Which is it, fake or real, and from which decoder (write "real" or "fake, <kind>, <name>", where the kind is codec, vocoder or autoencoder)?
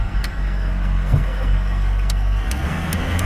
fake, codec, SNAC